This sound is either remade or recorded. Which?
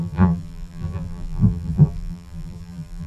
remade